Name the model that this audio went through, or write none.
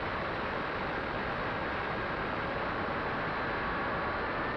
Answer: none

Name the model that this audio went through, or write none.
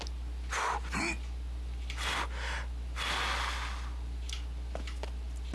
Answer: none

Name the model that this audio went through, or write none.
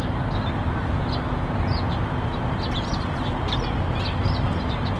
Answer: none